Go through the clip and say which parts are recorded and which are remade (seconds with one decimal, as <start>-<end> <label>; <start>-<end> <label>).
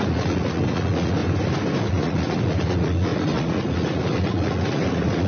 0.0-1.2 remade; 1.2-1.9 recorded; 1.9-5.3 remade